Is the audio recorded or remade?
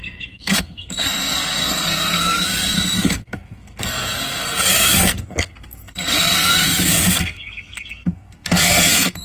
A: remade